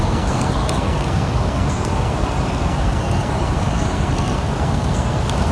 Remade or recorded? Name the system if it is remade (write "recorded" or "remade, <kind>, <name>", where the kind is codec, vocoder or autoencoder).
remade, codec, SNAC